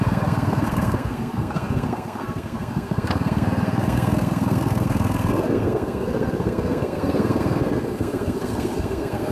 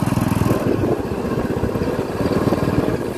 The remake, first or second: first